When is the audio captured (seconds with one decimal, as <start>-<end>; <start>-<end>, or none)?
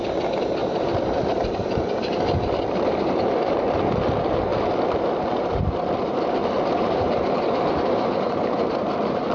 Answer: 0.0-0.6; 3.6-4.5; 8.8-9.3